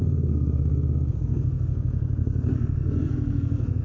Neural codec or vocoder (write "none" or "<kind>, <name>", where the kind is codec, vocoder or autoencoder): codec, SNAC